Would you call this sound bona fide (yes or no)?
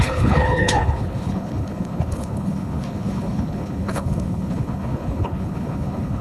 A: no